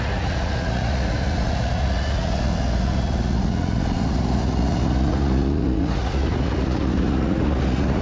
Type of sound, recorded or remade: remade